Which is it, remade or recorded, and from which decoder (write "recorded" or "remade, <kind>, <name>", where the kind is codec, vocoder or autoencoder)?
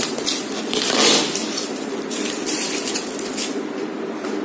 recorded